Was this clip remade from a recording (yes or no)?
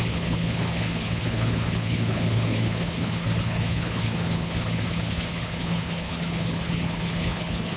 yes